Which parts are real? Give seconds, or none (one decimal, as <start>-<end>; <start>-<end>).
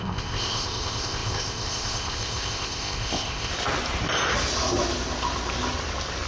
3.5-6.3